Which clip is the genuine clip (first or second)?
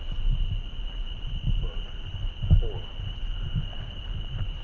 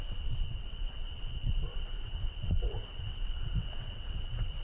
first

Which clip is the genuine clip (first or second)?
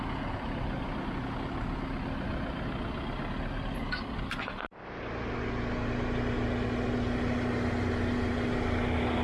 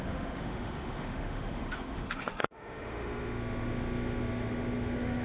first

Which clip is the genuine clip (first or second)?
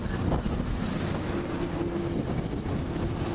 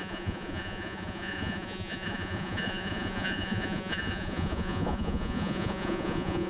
first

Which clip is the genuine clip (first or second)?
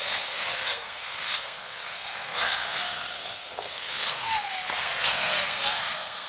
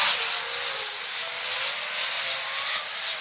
second